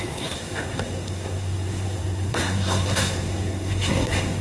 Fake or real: fake